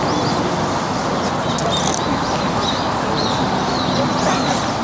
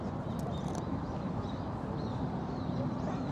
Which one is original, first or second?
first